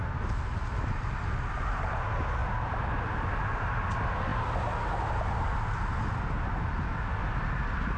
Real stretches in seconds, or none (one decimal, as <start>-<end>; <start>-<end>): 0.0-8.0